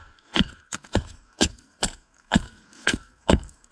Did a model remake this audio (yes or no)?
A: yes